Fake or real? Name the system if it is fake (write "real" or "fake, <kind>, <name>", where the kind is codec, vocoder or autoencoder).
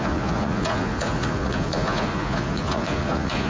fake, vocoder, Vocos